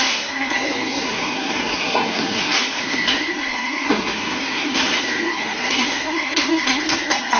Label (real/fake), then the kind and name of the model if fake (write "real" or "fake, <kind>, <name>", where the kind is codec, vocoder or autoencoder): fake, codec, SNAC